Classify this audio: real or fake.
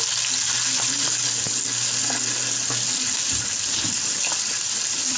real